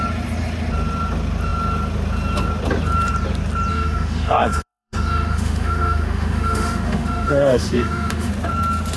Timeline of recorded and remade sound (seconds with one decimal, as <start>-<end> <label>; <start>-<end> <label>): 0.0-3.7 recorded; 3.7-8.3 remade; 8.3-9.0 recorded